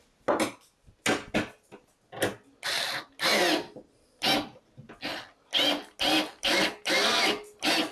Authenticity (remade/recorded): recorded